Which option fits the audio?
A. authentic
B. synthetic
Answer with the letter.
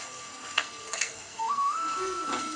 B